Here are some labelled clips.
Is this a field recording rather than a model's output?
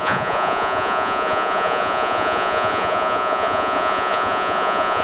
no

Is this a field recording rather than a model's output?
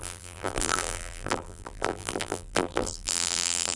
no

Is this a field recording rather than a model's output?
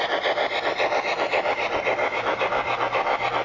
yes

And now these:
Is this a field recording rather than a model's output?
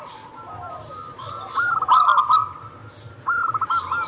yes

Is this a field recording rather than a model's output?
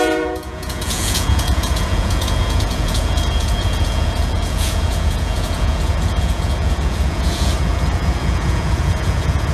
no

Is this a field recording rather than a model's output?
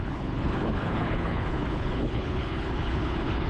no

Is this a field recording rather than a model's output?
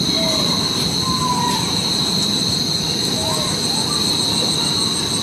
yes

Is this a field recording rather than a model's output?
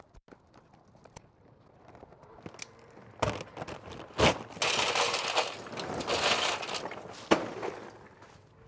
yes